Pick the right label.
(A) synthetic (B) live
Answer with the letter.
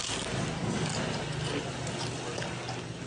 B